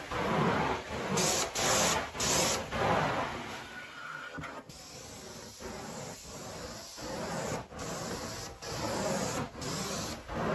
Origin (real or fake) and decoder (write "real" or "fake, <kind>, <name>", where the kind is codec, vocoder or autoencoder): real